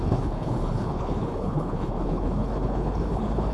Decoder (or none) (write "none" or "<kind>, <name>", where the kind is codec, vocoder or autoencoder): codec, HILCodec